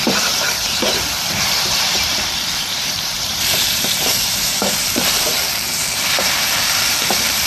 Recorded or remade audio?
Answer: remade